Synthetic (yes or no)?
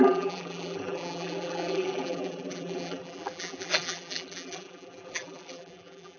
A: yes